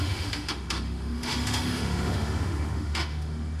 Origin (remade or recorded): remade